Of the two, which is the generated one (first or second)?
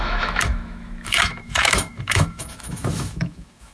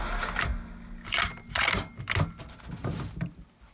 first